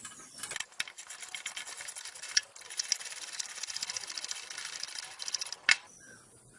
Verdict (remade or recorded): recorded